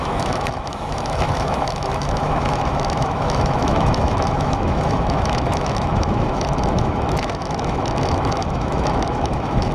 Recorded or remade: remade